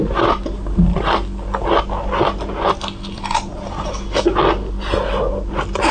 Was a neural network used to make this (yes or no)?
no